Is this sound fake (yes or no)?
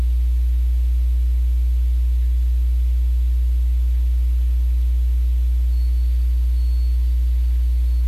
no